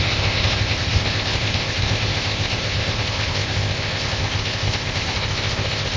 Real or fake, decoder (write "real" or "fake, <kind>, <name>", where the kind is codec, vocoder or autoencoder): fake, codec, ZipCodec